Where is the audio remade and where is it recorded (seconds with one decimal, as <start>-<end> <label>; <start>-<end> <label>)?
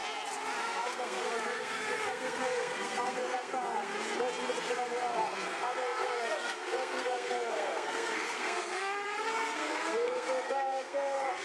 0.0-0.6 recorded; 0.6-3.9 remade; 3.9-4.6 recorded; 4.6-11.4 remade